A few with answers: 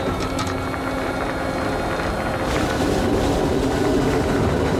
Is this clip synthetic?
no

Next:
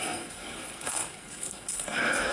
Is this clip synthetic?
yes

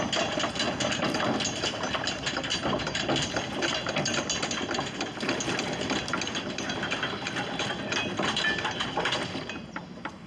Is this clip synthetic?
no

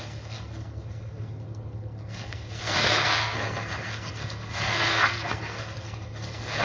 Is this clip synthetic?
yes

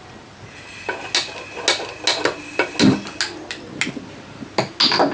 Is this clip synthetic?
no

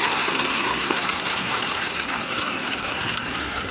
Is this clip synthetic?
yes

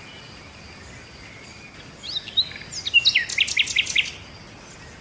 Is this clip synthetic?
no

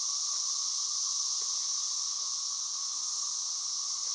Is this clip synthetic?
no